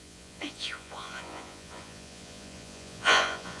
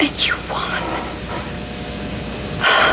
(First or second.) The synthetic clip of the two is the first